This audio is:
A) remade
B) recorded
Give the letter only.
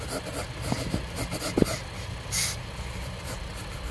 B